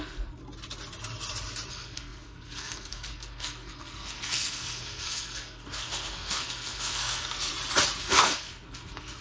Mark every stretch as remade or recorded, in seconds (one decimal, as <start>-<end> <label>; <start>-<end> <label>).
0.0-0.4 remade; 0.4-1.7 recorded; 1.7-7.5 remade; 7.5-8.0 recorded; 8.0-9.2 remade